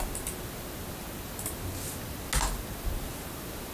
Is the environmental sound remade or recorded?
recorded